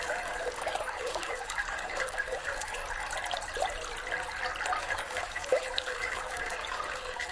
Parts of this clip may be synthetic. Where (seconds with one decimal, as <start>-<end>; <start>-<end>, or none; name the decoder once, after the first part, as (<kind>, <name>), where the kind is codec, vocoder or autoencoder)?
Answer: 0.0-2.8 (codec, DAC); 4.8-7.3